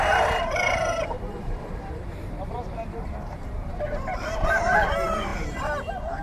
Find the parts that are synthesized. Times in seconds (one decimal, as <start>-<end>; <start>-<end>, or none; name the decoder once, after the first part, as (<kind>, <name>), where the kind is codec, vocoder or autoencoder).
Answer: 0.0-6.2 (vocoder, BigVGAN v2)